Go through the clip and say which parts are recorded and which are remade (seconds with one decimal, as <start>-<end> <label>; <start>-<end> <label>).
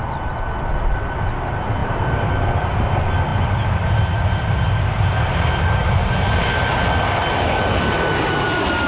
0.0-1.8 recorded; 1.8-2.3 remade; 2.3-8.9 recorded